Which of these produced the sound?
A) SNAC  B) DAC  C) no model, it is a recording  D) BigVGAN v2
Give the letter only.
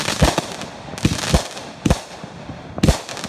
C